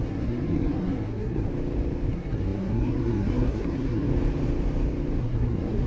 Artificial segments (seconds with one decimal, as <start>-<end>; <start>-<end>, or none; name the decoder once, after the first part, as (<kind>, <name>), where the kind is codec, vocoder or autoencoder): 0.0-1.5 (codec, SNAC); 2.1-4.1; 5.2-5.9